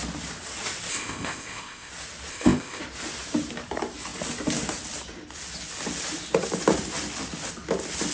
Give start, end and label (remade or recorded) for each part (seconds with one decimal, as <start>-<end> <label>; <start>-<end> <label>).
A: 0.0-0.9 recorded; 0.9-1.9 remade; 1.9-2.3 recorded; 2.3-2.8 remade; 2.8-8.1 recorded